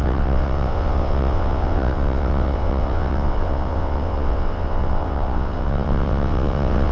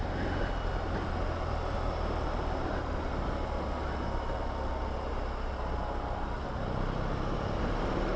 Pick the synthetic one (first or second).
first